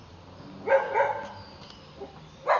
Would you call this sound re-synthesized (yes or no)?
no